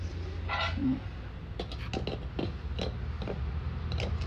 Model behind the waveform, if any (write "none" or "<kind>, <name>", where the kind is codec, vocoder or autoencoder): none